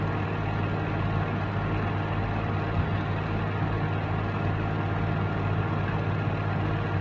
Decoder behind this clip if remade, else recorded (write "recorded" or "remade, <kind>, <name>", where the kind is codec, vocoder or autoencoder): recorded